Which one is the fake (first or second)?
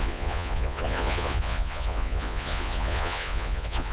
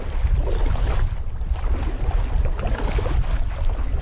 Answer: first